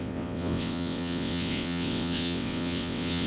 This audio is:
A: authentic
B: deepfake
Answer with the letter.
B